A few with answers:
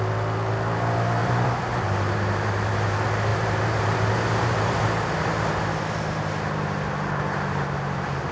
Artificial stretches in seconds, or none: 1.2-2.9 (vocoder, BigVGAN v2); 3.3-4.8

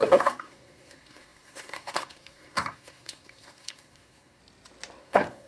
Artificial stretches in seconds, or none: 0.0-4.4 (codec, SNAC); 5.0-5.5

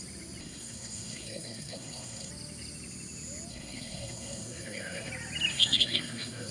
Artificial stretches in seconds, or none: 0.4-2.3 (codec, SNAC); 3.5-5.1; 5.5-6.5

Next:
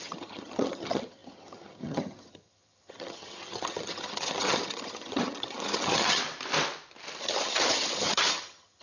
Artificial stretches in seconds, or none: 0.0-6.2 (vocoder, HiFi-GAN); 7.2-8.8

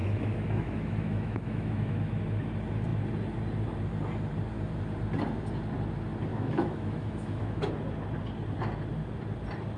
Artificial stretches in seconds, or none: 0.0-2.2 (autoencoder, DAC-VAE); 6.3-7.7